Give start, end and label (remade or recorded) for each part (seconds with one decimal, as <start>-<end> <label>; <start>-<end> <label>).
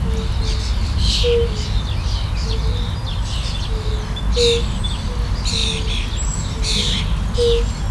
0.0-7.9 recorded